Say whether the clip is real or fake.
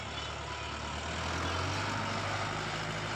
real